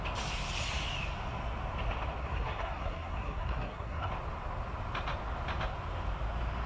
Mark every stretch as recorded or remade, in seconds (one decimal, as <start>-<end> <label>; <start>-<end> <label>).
0.0-2.2 recorded; 2.2-4.1 remade; 4.1-6.7 recorded